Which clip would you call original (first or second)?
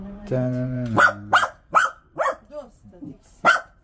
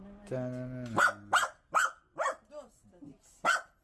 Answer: second